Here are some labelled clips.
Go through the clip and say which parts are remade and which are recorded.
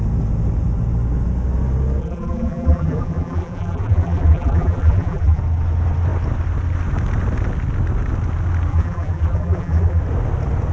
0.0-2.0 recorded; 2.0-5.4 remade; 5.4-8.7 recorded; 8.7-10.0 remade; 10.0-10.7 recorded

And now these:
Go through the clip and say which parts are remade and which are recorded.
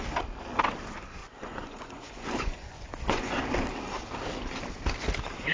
0.0-1.2 recorded; 1.2-3.4 remade; 3.4-5.5 recorded